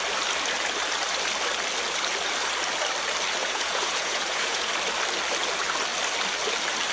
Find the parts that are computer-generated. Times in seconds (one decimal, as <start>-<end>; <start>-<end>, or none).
3.4-4.7